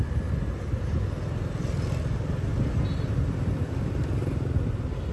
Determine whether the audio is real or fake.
real